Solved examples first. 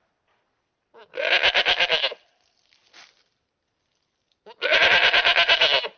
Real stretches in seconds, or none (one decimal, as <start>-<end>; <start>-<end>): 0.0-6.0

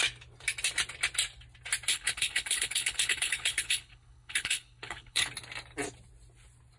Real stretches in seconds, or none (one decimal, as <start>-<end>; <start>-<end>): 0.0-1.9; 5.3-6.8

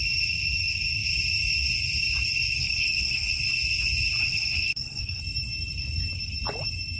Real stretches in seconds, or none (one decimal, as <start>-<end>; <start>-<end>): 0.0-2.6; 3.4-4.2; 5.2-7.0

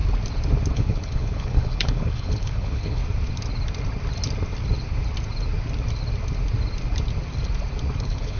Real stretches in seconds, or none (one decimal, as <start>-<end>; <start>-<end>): 0.0-0.7; 3.0-8.0

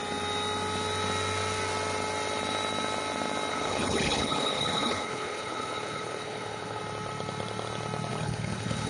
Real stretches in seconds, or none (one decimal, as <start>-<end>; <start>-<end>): 0.0-3.5; 6.8-8.1

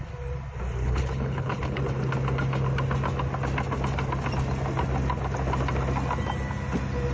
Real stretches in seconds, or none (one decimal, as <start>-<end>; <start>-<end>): 0.0-0.8; 1.8-7.1

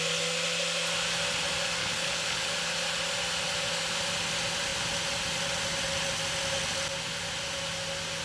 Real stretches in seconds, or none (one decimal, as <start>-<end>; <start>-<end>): 0.0-1.8; 2.5-8.2

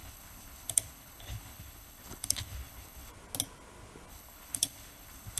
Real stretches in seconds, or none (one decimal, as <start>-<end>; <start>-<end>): 3.1-4.1